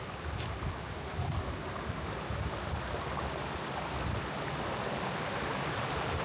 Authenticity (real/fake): real